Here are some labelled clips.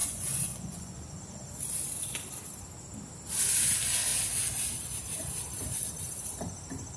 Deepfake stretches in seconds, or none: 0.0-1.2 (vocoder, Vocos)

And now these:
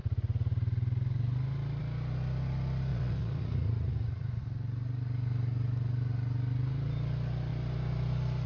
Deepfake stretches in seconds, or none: 2.9-4.4 (vocoder, Vocos)

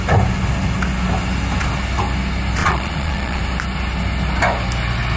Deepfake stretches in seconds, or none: 2.6-3.4 (vocoder, Vocos)

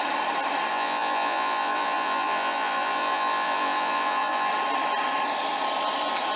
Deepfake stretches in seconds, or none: 0.7-4.5 (vocoder, Vocos)

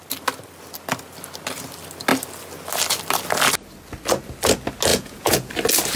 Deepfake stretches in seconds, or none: 4.9-5.5 (vocoder, Vocos)